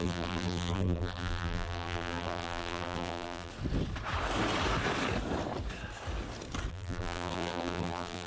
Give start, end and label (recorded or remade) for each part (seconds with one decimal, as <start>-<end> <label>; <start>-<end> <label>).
0.0-3.5 remade; 3.5-6.7 recorded; 6.7-8.3 remade